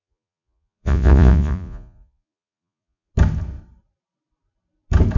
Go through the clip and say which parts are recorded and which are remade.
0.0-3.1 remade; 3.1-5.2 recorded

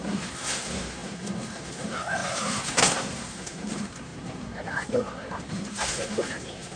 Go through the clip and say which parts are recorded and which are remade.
0.0-6.8 remade

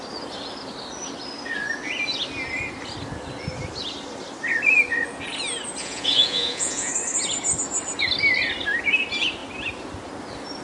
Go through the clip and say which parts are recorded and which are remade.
0.0-5.8 recorded; 5.8-6.9 remade; 6.9-10.6 recorded

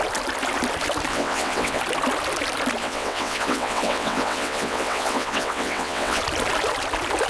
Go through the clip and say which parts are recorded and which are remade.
0.0-1.1 recorded; 1.1-1.8 remade; 1.8-2.8 recorded; 2.8-6.2 remade; 6.2-7.3 recorded

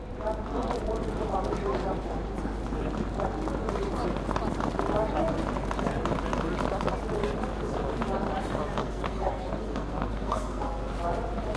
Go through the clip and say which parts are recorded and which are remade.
0.0-8.8 recorded; 8.8-10.9 remade; 10.9-11.6 recorded

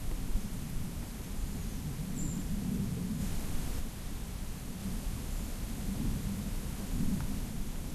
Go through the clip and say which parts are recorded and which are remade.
0.0-3.2 remade; 3.2-3.8 recorded; 3.8-4.8 remade; 4.8-7.5 recorded; 7.5-7.9 remade

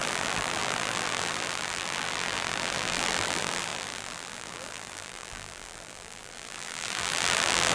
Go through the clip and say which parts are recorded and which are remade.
0.0-7.7 remade

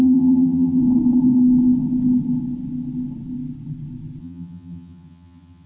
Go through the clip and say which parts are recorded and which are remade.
0.0-0.8 remade; 0.8-4.2 recorded; 4.2-5.7 remade